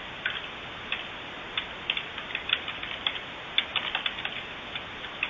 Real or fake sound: real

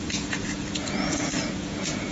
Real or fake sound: fake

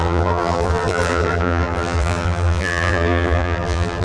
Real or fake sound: fake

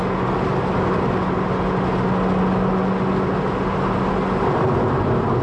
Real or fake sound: real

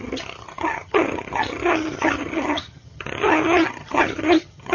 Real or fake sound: fake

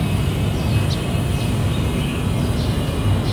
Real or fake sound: real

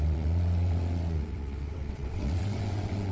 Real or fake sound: fake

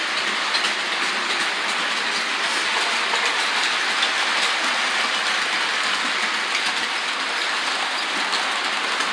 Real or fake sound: real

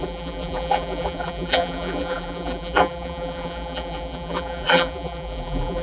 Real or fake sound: fake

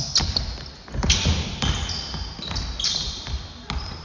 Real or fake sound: real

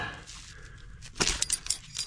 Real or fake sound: real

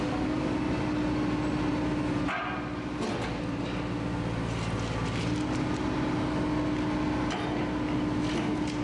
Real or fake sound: real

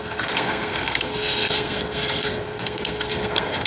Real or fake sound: fake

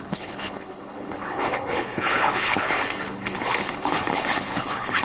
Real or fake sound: fake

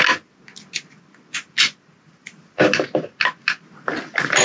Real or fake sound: real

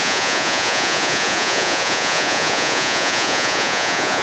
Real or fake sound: fake